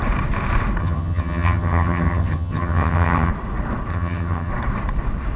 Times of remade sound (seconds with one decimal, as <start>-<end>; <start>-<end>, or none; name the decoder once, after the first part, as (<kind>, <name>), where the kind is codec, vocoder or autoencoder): 0.8-3.3 (vocoder, HiFi-GAN); 3.9-4.5